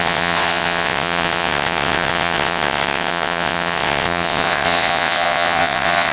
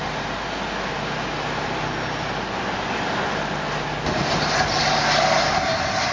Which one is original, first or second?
second